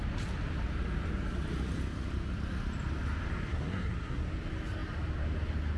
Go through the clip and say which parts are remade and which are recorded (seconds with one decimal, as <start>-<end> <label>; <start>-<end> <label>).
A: 0.0-3.5 recorded; 3.5-4.3 remade; 4.3-5.8 recorded

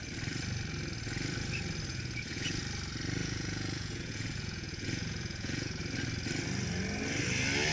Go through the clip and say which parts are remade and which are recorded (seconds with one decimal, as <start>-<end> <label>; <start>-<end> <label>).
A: 0.0-1.9 recorded; 1.9-2.6 remade; 2.6-3.2 recorded; 3.2-5.8 remade; 5.8-7.7 recorded

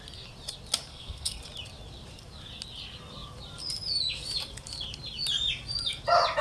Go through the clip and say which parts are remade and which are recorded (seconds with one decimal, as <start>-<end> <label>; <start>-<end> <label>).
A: 0.0-0.9 recorded; 0.9-1.4 remade; 1.4-6.4 recorded

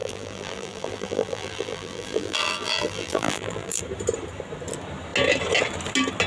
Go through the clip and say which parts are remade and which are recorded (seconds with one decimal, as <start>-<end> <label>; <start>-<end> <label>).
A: 0.0-3.8 remade; 3.8-6.3 recorded